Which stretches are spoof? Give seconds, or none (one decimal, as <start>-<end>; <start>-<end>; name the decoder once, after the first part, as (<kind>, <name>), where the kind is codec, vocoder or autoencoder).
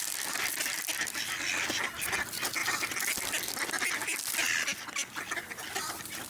none